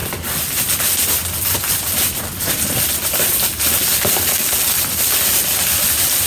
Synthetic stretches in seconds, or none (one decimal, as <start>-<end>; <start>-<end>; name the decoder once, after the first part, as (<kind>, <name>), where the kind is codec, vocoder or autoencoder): none